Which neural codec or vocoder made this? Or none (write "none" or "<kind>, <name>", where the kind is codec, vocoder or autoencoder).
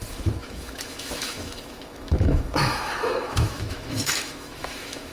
autoencoder, DAC-VAE